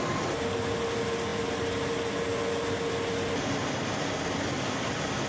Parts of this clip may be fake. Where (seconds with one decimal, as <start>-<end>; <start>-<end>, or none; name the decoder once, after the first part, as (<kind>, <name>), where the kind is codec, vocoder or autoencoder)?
none